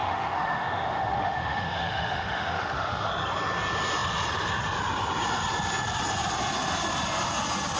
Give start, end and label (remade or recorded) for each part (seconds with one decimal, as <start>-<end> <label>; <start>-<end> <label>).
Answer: 0.0-3.1 remade; 3.1-7.8 recorded